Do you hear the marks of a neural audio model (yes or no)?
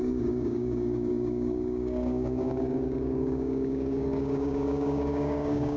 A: yes